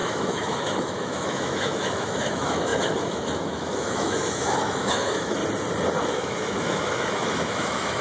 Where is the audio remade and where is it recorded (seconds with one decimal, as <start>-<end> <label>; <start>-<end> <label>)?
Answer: 0.0-5.4 remade; 5.4-6.0 recorded; 6.0-8.0 remade